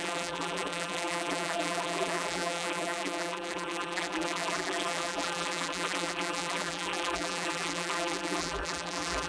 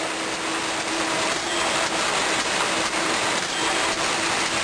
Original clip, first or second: second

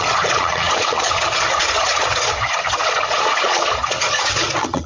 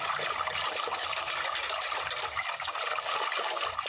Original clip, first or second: second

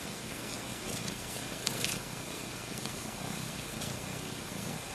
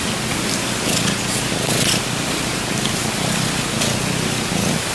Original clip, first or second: second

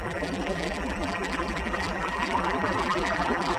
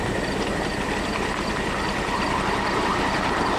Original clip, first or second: second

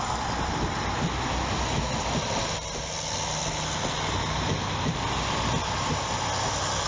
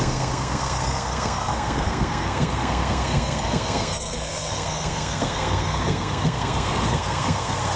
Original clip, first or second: first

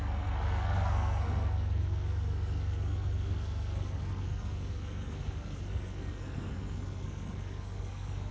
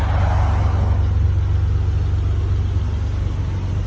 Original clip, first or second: second